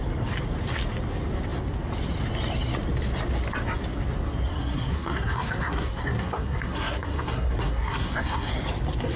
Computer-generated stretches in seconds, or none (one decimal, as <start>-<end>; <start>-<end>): 4.5-8.5